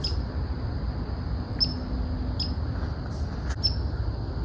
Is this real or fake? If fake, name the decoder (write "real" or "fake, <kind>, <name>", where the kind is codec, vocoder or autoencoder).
real